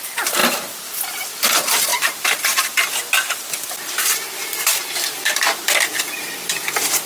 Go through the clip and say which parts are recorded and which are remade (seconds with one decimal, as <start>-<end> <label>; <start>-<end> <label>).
0.0-0.4 remade; 0.4-1.1 recorded; 1.1-7.1 remade